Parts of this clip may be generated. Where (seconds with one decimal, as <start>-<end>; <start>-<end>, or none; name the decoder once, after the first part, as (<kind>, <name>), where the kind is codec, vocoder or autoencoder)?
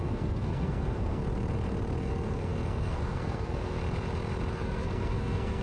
0.0-1.2 (codec, SNAC); 2.0-3.8; 4.5-5.6